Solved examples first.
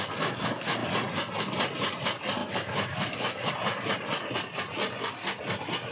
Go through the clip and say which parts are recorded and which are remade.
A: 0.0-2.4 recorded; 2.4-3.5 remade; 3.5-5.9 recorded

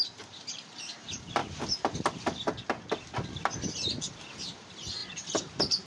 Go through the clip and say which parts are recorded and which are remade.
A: 0.0-1.4 remade; 1.4-4.3 recorded; 4.3-5.0 remade; 5.0-5.9 recorded

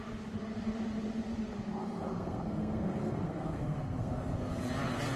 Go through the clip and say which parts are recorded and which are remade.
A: 0.0-1.8 recorded; 1.8-4.5 remade; 4.5-5.2 recorded